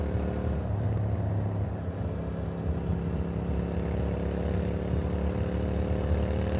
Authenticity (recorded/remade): recorded